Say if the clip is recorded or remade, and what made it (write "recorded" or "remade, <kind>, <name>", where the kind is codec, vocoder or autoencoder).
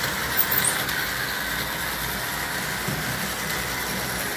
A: recorded